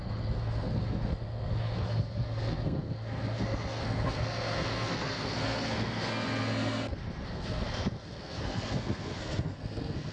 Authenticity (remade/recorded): remade